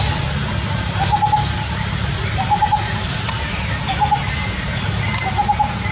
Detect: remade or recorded recorded